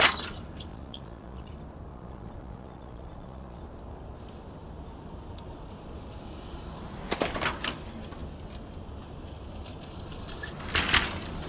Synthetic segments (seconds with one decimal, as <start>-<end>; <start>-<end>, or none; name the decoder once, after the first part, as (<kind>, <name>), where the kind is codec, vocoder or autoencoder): 0.7-1.5 (vocoder, Vocos); 1.9-3.6